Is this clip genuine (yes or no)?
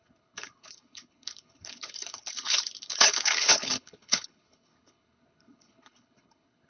no